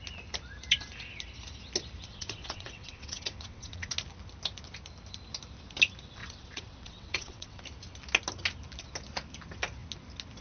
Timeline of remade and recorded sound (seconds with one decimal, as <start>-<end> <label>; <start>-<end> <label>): 0.0-2.1 recorded; 2.1-3.9 remade; 3.9-6.2 recorded; 6.2-7.6 remade; 7.6-10.4 recorded

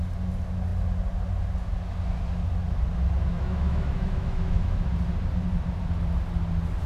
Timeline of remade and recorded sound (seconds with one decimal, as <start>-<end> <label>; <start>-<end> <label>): 0.0-3.3 recorded; 3.3-4.8 remade; 4.8-6.9 recorded